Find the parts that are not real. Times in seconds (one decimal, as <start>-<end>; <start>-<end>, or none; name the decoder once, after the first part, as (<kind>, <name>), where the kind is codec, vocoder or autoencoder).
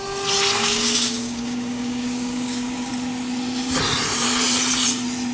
0.6-2.9 (codec, DAC)